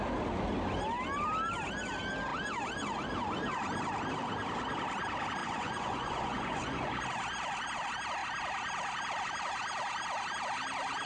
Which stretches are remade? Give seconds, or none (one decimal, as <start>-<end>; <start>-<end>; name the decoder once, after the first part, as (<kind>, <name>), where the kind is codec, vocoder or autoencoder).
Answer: 5.4-7.0 (vocoder, Vocos)